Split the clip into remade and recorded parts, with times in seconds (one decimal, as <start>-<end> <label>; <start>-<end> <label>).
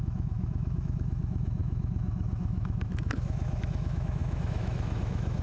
0.0-5.4 remade